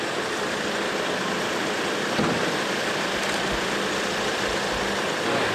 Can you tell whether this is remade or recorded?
recorded